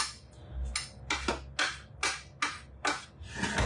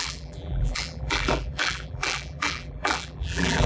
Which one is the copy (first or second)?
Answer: second